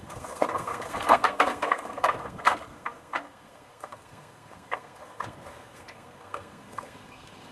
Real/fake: fake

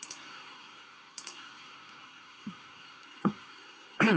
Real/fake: fake